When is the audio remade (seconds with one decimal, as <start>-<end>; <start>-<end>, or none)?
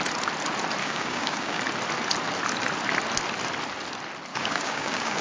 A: 0.8-1.6; 4.3-5.2